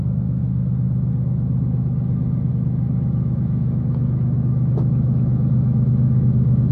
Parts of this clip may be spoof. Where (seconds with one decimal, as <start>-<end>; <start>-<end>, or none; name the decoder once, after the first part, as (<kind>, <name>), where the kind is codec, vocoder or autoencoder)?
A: 0.0-0.4 (autoencoder, DAC-VAE); 2.5-6.7